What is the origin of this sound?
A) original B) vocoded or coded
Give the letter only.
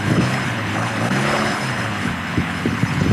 B